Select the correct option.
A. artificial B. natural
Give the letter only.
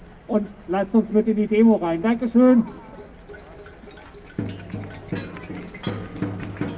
B